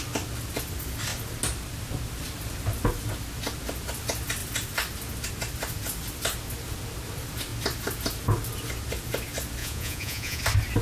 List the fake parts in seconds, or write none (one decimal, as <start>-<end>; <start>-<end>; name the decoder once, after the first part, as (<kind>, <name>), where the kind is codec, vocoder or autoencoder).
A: 9.6-10.4 (vocoder, Vocos)